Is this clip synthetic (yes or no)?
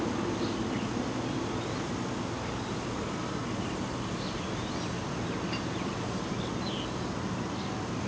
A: no